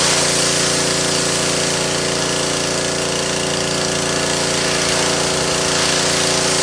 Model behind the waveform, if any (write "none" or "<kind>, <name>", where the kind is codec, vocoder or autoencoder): none